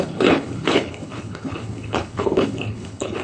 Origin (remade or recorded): remade